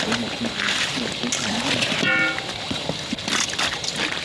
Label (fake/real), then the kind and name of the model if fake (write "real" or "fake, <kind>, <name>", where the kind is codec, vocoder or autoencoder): real